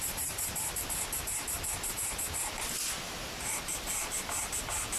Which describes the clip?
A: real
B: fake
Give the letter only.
B